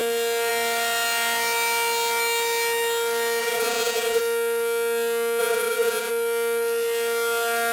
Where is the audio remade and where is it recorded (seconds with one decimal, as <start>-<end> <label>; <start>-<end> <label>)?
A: 0.0-3.4 recorded; 3.4-4.2 remade; 4.2-5.4 recorded; 5.4-6.1 remade; 6.1-7.7 recorded